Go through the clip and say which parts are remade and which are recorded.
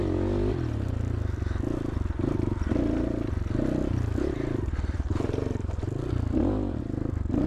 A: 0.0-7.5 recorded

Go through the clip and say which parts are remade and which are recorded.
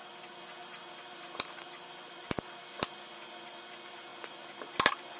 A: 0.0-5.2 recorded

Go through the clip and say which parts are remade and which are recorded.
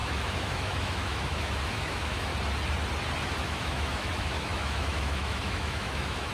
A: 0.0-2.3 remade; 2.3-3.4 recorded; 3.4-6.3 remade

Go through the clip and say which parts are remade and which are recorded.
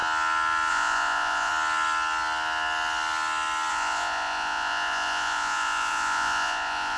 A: 0.0-0.7 recorded; 0.7-1.5 remade; 1.5-3.7 recorded; 3.7-7.0 remade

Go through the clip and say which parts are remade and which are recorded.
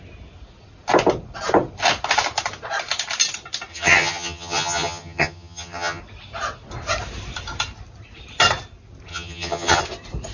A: 0.0-3.7 recorded; 3.7-6.0 remade; 6.0-9.1 recorded; 9.1-9.8 remade; 9.8-10.3 recorded